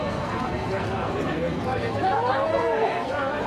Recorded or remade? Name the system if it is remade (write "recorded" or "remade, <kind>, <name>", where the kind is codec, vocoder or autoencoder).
remade, codec, SNAC